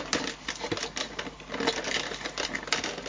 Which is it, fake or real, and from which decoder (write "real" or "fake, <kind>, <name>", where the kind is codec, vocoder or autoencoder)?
real